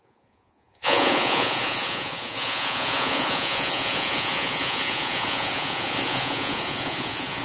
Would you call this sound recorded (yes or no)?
no